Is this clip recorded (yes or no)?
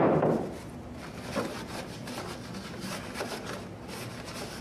yes